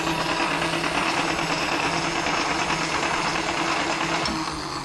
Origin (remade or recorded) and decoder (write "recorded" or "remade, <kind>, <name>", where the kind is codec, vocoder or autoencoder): recorded